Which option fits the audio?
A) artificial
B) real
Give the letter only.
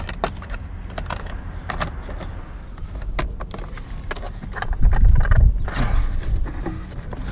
B